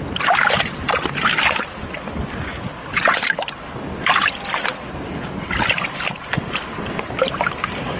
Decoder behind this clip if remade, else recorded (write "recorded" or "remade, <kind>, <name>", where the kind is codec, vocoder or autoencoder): recorded